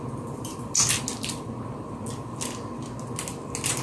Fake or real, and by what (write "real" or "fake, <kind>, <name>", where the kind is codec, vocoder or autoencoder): real